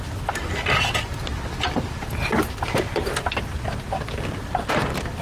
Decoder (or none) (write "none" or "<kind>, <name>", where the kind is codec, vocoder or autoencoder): none